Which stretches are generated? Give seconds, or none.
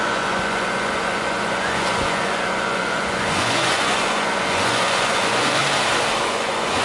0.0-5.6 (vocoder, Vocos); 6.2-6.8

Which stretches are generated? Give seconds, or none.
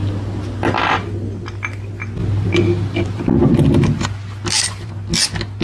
none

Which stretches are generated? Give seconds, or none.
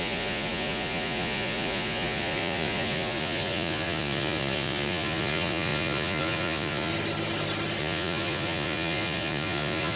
0.0-6.9 (vocoder, Vocos); 7.8-10.0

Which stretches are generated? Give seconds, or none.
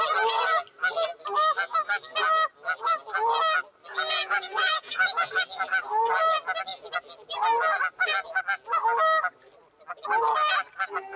4.2-5.3 (vocoder, Vocos)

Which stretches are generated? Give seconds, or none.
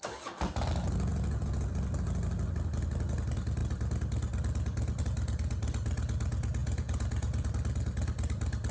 1.1-1.7 (vocoder, Vocos); 6.6-7.5